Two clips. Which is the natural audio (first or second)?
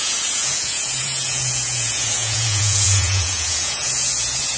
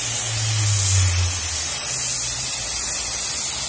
second